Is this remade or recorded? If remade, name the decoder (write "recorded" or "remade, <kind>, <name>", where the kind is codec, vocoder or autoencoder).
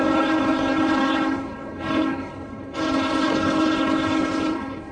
remade, codec, HILCodec